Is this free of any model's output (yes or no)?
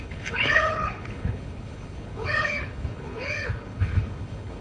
no